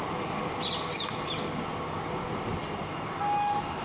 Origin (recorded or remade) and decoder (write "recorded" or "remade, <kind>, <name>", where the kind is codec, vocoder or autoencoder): recorded